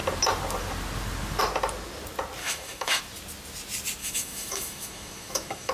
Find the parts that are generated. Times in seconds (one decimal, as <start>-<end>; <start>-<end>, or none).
2.4-3.0; 4.0-5.7